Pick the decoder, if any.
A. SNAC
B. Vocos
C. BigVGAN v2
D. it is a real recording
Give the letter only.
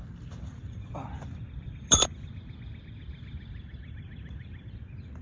C